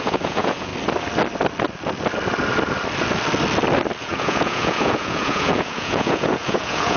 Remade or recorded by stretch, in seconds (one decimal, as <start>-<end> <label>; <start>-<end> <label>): 0.0-0.7 remade; 0.7-4.0 recorded; 4.0-7.0 remade